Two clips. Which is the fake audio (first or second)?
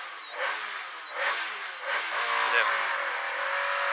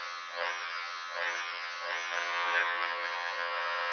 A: second